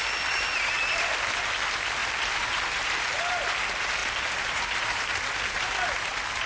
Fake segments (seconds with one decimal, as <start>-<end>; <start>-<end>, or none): 2.0-3.5; 4.0-5.1